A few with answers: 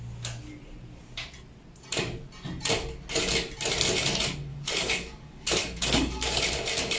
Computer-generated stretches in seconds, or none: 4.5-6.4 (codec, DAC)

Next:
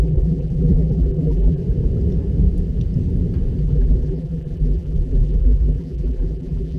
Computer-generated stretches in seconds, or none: 0.0-1.6 (vocoder, BigVGAN v2); 3.6-6.8

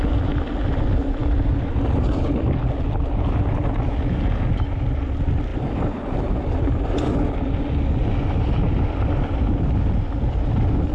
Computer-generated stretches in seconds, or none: none